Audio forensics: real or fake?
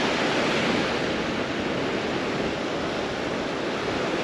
real